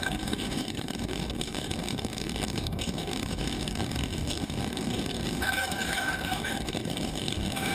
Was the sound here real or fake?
fake